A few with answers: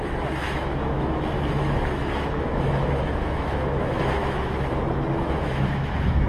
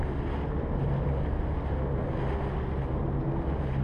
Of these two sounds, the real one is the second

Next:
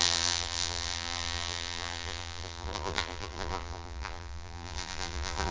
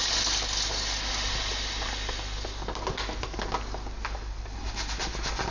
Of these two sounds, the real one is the second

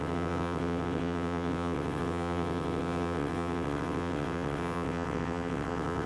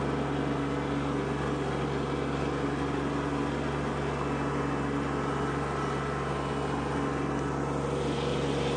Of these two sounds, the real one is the second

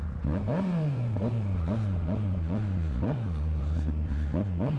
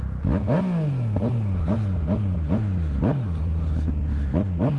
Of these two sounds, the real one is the second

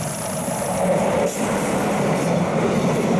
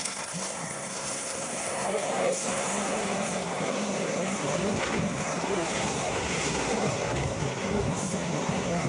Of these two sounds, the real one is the first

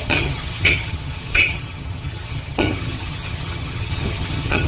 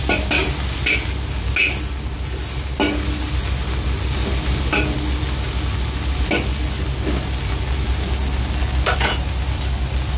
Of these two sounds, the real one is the second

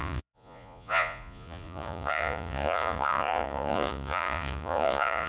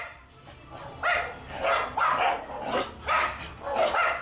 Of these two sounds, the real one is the second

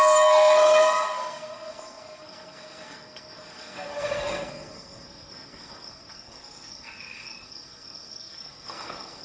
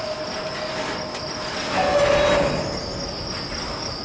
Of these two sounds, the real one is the second